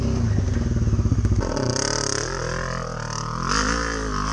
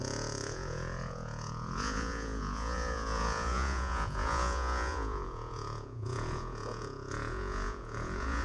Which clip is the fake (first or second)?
second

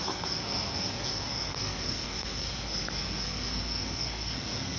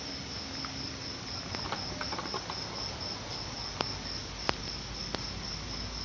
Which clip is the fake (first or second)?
first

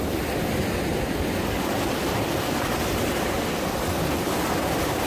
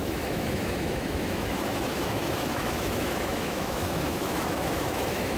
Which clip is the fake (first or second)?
second